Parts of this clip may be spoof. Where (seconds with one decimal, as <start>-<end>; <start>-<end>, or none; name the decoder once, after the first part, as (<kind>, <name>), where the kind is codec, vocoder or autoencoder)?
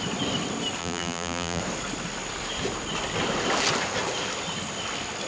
0.8-1.6 (vocoder, BigVGAN v2)